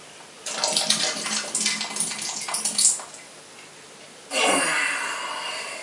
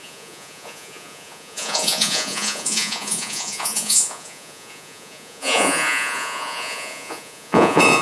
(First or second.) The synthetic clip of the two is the second